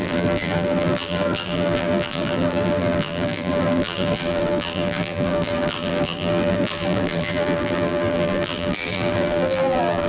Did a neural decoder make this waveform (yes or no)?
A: yes